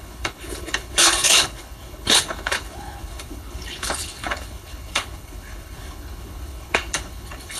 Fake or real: fake